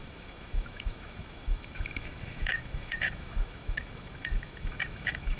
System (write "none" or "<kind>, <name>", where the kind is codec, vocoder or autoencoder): autoencoder, DAC-VAE